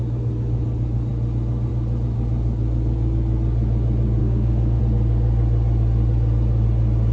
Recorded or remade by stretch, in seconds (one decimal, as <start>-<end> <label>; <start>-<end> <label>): 0.0-4.2 recorded; 4.2-4.8 remade; 4.8-7.1 recorded